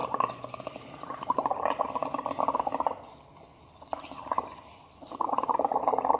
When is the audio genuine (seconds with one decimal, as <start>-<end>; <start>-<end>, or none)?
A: 0.0-6.2